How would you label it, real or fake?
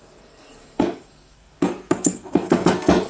fake